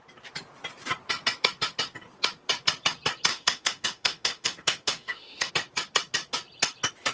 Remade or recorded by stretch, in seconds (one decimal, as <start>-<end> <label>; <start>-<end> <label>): 0.0-3.3 recorded; 3.3-5.5 remade; 5.5-7.1 recorded